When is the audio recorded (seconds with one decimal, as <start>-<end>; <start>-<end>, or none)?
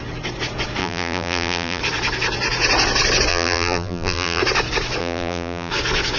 0.0-0.8; 1.8-3.3; 4.4-5.0; 5.7-6.2